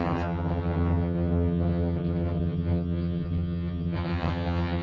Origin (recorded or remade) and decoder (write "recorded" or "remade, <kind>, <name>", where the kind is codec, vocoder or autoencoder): remade, vocoder, HiFi-GAN